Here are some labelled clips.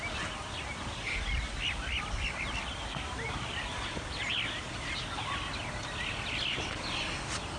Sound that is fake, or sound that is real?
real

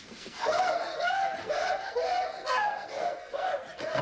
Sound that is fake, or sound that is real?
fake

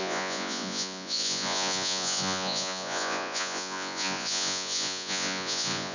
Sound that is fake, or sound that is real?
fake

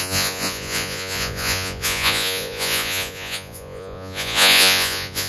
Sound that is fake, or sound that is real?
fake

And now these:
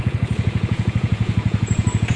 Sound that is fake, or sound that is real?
fake